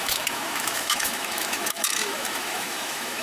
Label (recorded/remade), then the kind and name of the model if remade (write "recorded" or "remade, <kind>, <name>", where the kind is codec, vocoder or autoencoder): remade, autoencoder, DAC-VAE